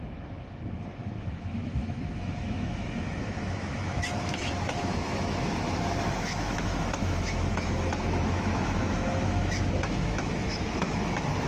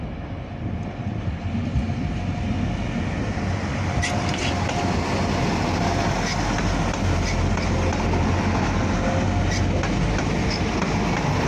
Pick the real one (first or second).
second